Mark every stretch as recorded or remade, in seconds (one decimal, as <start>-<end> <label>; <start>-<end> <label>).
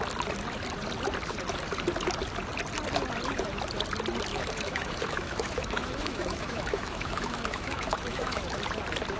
0.0-4.3 recorded; 4.3-8.6 remade; 8.6-9.2 recorded